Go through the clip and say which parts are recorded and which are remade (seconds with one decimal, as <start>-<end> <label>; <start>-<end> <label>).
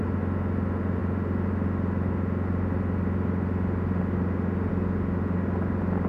0.0-6.1 recorded